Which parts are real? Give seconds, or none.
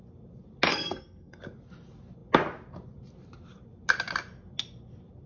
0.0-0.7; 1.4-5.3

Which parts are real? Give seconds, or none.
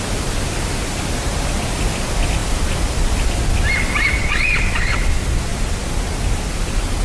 0.0-4.2; 5.0-7.0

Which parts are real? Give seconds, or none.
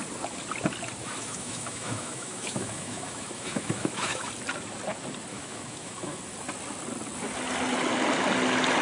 0.0-1.0; 4.3-5.3; 6.2-8.8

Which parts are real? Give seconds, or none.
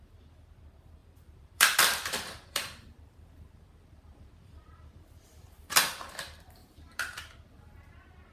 0.0-1.0; 6.0-6.6; 7.3-8.3